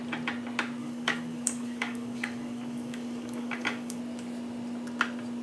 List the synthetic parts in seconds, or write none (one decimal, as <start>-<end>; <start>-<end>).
0.8-4.0